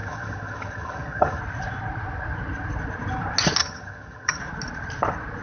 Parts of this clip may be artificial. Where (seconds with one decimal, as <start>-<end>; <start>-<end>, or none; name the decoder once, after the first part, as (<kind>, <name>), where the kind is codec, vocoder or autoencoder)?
0.0-1.4 (vocoder, HiFi-GAN); 3.6-4.4